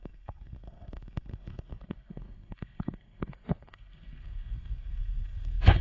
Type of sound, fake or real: fake